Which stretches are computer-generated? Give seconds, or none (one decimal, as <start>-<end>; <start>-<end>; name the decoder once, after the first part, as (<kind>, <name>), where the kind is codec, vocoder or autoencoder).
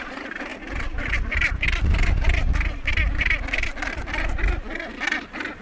none